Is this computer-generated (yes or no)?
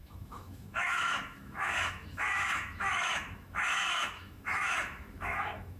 yes